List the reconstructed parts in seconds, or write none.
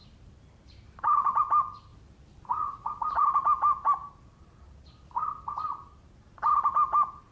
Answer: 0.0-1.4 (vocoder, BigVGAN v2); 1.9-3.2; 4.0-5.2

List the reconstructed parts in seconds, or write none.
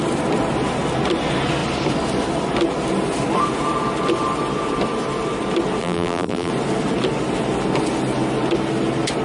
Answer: 5.8-6.5 (vocoder, BigVGAN v2)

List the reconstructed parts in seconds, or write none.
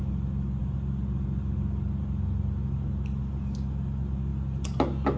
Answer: none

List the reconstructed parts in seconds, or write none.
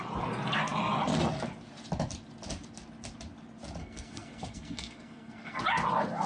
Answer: 3.8-5.6 (codec, SNAC)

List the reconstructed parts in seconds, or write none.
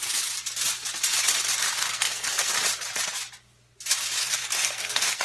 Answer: 1.8-2.5 (codec, SNAC); 4.2-5.2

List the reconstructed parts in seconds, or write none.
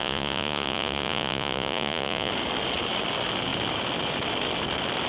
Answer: 0.0-2.3 (vocoder, Vocos)